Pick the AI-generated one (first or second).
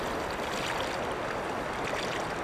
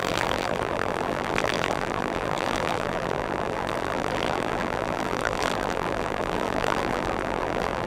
second